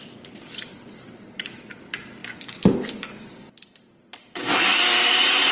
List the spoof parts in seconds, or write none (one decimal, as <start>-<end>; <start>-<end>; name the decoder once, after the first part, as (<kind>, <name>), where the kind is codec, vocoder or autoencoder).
2.2-3.5 (vocoder, BigVGAN v2); 4.7-5.5